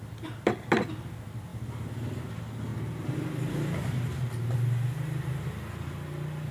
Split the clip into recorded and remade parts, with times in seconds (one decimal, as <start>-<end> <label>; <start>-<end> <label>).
0.0-6.5 recorded